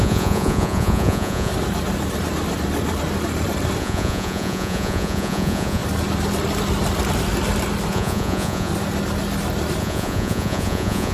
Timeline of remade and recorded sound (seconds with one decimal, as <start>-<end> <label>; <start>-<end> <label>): 0.0-1.5 remade; 1.5-3.8 recorded; 3.8-5.8 remade; 5.8-7.9 recorded; 7.9-8.7 remade; 8.7-9.8 recorded; 9.8-11.1 remade